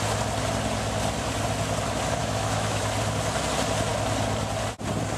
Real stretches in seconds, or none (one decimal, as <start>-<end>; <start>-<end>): 0.0-2.2; 2.8-5.2